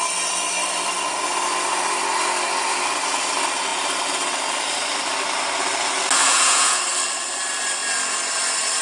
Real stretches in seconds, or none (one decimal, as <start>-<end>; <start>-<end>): 0.0-6.2; 6.8-8.8